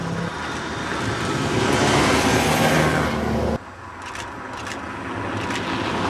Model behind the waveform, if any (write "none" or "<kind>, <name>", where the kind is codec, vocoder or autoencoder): none